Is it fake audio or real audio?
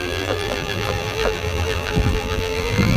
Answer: fake